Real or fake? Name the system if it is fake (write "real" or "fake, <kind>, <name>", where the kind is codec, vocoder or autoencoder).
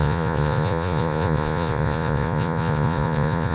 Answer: fake, vocoder, Vocos